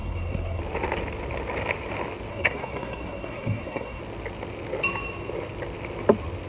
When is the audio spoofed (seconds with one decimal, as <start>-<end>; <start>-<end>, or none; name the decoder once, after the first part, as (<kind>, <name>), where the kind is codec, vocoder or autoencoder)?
0.0-0.6 (codec, SNAC); 2.3-4.0